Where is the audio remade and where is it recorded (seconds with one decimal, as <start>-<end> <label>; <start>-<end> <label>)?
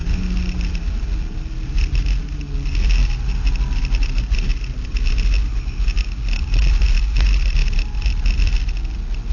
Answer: 0.0-9.3 recorded